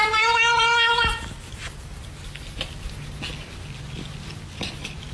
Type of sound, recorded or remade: recorded